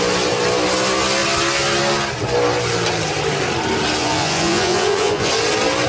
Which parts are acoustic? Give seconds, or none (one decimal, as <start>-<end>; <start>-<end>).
0.0-4.0; 5.3-5.9